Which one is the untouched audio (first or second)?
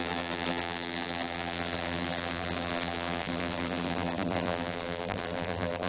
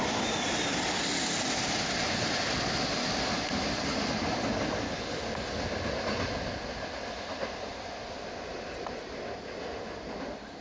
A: second